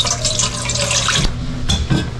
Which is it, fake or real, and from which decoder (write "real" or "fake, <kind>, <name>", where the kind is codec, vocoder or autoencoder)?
real